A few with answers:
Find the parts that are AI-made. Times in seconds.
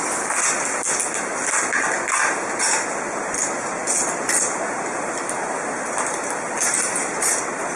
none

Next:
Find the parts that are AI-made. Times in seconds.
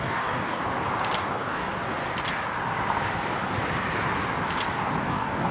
0.0-0.6 (codec, DAC); 1.2-1.7; 5.0-5.5